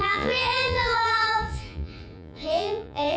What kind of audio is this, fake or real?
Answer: fake